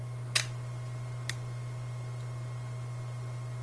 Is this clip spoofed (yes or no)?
no